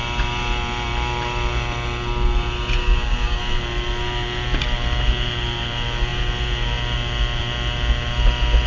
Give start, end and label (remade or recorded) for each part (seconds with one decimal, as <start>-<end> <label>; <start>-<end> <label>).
0.0-2.8 recorded; 2.8-3.4 remade; 3.4-8.7 recorded